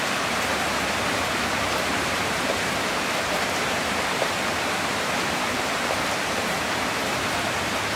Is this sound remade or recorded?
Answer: remade